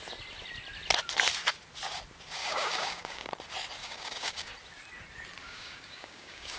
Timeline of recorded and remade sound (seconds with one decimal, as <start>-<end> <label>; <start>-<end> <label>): 0.0-2.4 recorded; 2.4-3.3 remade; 3.3-3.8 recorded; 3.8-4.5 remade; 4.5-5.4 recorded; 5.4-6.6 remade